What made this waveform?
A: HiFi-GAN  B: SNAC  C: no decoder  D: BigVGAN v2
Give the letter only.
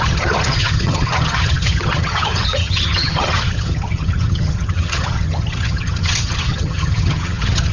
A